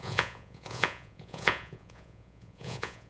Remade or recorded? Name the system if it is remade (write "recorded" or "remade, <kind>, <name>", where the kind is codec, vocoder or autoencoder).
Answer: remade, vocoder, Vocos